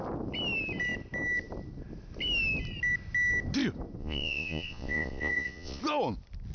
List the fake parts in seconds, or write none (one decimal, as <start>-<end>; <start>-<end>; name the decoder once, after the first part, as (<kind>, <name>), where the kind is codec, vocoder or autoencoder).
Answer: 4.0-5.8 (vocoder, Vocos)